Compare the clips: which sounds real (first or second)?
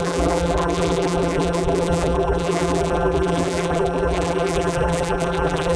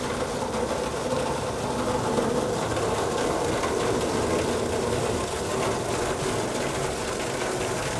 second